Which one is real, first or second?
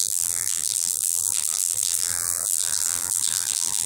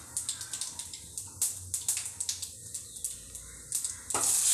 second